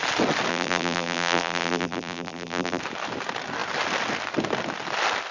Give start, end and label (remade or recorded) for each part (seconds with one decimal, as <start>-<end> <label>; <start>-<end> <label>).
0.0-0.5 recorded; 0.5-2.8 remade; 2.8-5.3 recorded